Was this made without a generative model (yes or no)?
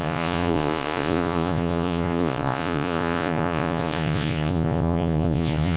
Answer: no